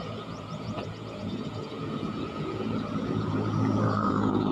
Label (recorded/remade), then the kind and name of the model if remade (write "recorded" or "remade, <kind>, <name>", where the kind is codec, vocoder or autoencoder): remade, vocoder, Vocos